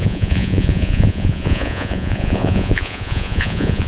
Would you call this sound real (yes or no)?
no